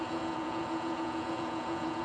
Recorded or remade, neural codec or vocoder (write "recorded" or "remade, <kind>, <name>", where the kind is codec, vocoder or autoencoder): remade, vocoder, Vocos